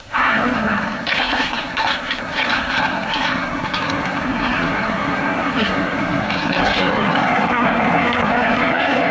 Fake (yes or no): yes